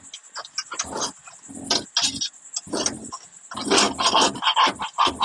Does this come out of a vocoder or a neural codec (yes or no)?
no